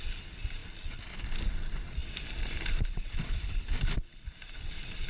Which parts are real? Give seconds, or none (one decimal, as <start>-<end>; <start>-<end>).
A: 0.6-1.4